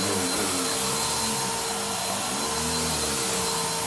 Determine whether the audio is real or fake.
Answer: real